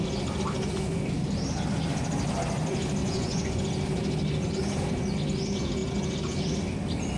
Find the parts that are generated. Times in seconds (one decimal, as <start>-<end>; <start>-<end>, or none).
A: 3.0-3.6